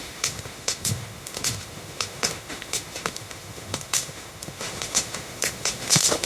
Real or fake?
fake